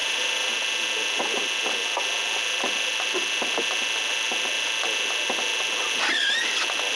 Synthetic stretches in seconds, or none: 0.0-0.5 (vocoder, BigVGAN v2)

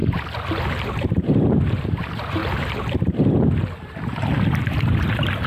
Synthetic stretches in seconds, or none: 0.7-2.4 (vocoder, BigVGAN v2)

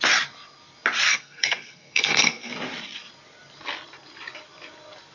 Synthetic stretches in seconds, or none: 1.1-2.5 (codec, SNAC)

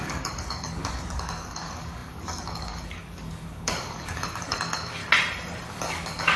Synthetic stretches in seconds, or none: 0.0-5.0 (codec, DAC); 5.7-6.4

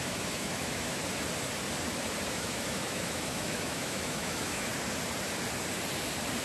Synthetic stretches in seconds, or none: 0.0-1.0 (autoencoder, DAC-VAE); 2.3-4.7

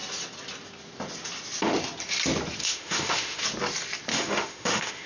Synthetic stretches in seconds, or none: 2.6-3.4 (autoencoder, DAC-VAE); 4.1-5.1